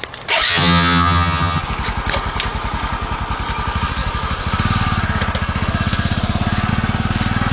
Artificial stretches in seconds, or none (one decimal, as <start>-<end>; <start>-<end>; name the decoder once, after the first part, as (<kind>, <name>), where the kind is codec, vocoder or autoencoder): 0.5-1.6 (vocoder, HiFi-GAN)